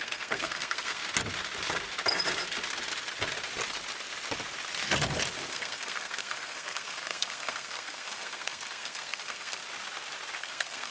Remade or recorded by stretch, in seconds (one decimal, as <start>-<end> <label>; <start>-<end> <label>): 0.0-1.0 remade; 1.0-5.5 recorded; 5.5-9.6 remade; 9.6-10.4 recorded; 10.4-10.9 remade